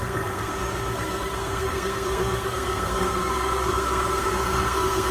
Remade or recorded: remade